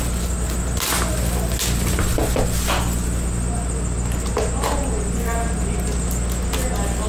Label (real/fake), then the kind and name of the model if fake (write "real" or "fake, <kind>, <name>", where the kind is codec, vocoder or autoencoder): real